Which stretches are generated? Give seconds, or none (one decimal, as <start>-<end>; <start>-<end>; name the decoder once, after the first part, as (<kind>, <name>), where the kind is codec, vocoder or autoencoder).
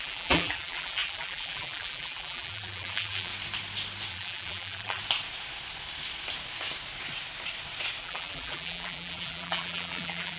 0.0-3.3 (vocoder, BigVGAN v2); 4.1-5.0; 8.0-10.4